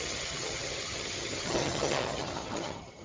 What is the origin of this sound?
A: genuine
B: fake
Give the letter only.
B